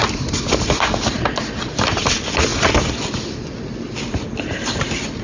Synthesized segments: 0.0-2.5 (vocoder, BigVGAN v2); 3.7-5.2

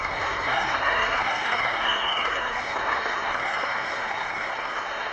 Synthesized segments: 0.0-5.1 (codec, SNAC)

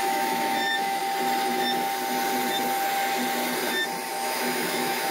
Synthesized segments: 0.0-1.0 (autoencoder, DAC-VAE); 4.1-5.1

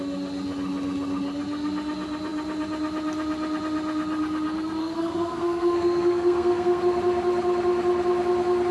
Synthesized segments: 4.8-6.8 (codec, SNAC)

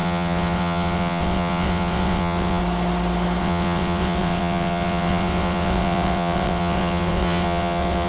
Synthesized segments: 0.0-2.6 (vocoder, WaveNeXt); 3.4-8.1

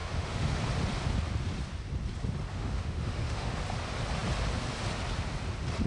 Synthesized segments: 0.0-0.6 (autoencoder, DAC-VAE); 2.5-3.6

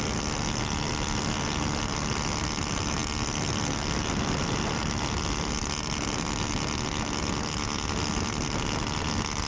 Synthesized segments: none

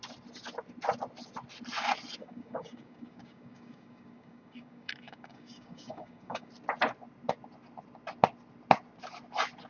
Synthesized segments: 2.2-6.5 (codec, DAC)